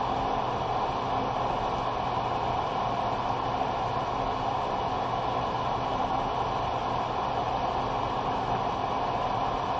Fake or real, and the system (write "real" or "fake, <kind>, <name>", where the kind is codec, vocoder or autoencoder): real